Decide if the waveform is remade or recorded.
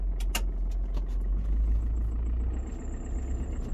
recorded